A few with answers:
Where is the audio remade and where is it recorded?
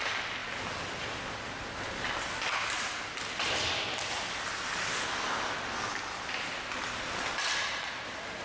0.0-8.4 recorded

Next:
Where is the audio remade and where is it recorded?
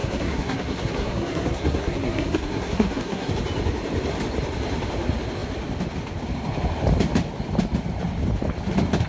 0.0-3.3 remade; 3.3-9.1 recorded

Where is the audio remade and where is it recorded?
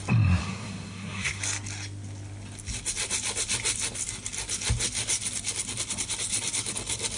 0.0-0.4 recorded; 0.4-1.4 remade; 1.4-7.2 recorded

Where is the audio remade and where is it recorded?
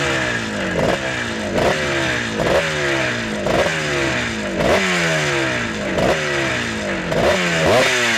0.0-8.2 recorded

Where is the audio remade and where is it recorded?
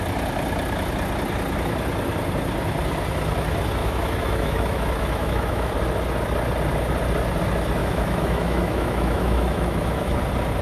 0.0-3.8 recorded; 3.8-5.7 remade; 5.7-7.8 recorded; 7.8-10.2 remade; 10.2-10.6 recorded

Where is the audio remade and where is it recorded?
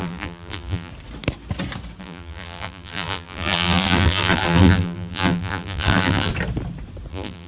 0.0-0.9 remade; 0.9-2.0 recorded; 2.0-6.3 remade; 6.3-7.1 recorded; 7.1-7.5 remade